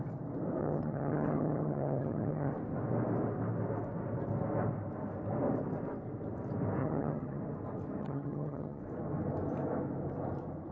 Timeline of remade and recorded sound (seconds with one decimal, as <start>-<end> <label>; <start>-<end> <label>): 0.0-0.6 recorded; 0.6-2.5 remade; 2.5-6.8 recorded; 6.8-7.4 remade; 7.4-8.0 recorded; 8.0-8.8 remade; 8.8-10.7 recorded